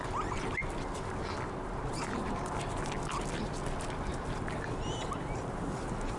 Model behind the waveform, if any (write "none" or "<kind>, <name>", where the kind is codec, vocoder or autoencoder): none